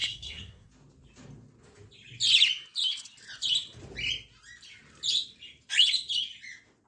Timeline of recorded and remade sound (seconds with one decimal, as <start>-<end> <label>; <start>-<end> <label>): 0.0-0.7 remade; 0.7-6.9 recorded